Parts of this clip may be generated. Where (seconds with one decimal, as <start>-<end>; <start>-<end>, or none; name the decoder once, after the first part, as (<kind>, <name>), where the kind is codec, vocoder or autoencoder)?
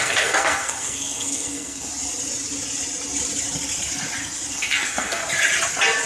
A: 0.0-1.9 (codec, SNAC); 4.5-5.2